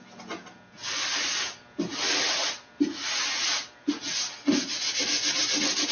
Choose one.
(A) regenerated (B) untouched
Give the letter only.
B